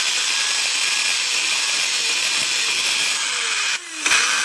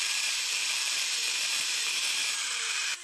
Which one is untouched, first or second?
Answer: first